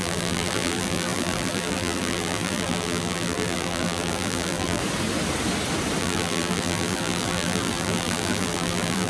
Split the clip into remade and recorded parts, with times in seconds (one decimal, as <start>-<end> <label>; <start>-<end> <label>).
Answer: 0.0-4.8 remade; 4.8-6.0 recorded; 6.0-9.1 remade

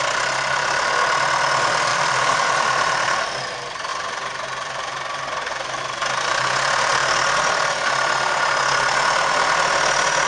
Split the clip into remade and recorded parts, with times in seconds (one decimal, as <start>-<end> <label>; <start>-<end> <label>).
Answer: 0.0-1.9 recorded; 1.9-3.4 remade; 3.4-3.9 recorded; 3.9-5.8 remade; 5.8-10.3 recorded

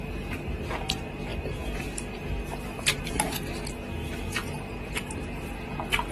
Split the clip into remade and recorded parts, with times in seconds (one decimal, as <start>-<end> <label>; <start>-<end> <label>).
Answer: 0.0-6.1 recorded